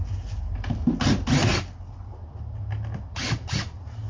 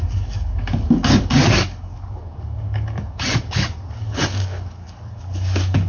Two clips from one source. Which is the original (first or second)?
first